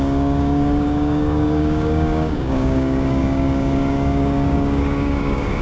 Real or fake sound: fake